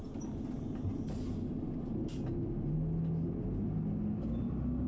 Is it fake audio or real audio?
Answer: real